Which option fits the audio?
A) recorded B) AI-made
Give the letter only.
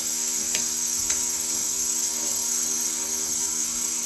B